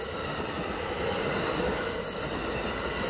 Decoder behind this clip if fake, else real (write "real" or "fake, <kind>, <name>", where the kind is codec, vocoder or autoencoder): real